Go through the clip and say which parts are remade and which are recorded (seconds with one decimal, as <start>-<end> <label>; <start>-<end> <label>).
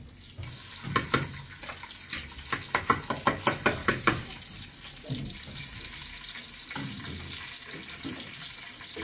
0.0-3.8 recorded; 3.8-4.4 remade; 4.4-9.0 recorded